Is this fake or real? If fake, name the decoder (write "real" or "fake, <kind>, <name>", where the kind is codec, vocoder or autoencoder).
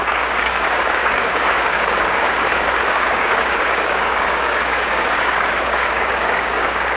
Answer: fake, codec, DAC